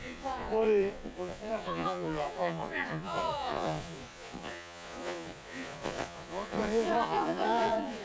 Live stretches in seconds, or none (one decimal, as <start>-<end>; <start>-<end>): none